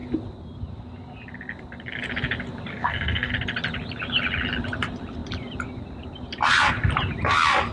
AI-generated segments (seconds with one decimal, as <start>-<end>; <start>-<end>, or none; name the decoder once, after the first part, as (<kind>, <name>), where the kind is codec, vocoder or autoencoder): 2.7-3.3 (codec, SNAC)